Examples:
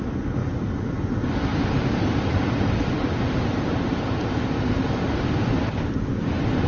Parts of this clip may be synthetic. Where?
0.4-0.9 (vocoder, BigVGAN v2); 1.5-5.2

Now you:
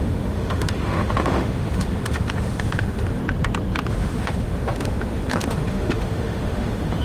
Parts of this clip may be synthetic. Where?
0.0-3.2 (autoencoder, DAC-VAE); 3.9-7.0

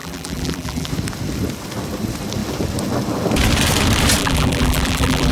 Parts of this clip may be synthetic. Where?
0.0-0.9 (vocoder, BigVGAN v2); 4.2-5.3

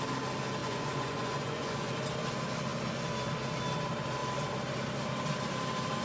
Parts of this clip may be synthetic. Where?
0.6-1.9 (vocoder, Vocos)

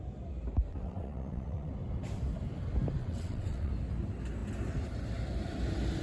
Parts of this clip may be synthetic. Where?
0.7-1.7 (vocoder, WaveNeXt); 3.0-3.7

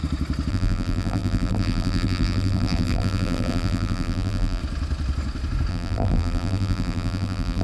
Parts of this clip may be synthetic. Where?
0.5-4.6 (vocoder, BigVGAN v2); 5.7-7.6

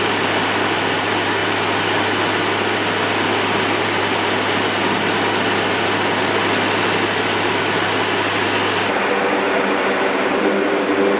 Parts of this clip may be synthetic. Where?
none